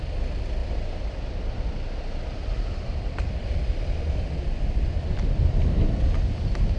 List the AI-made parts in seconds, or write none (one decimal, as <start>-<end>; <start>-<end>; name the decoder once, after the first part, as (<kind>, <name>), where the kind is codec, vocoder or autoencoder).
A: none